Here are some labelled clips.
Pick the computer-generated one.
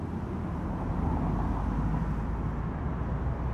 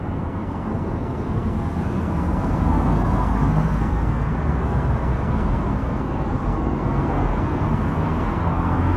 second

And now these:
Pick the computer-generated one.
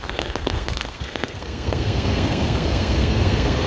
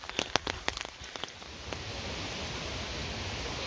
first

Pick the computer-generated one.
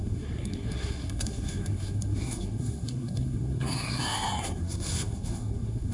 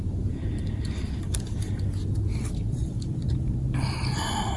first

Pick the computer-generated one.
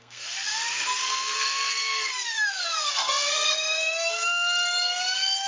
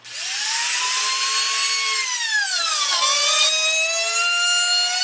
first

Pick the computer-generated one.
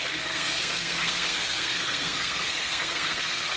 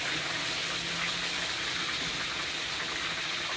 first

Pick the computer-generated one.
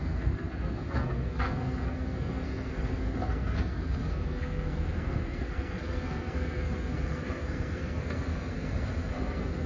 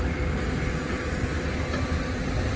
first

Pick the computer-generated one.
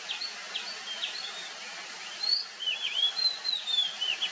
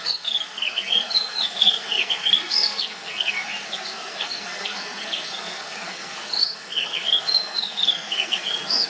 second